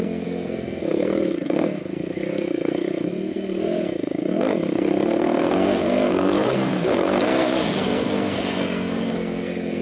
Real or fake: fake